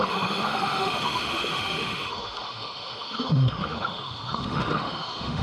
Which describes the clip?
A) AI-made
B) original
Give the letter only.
A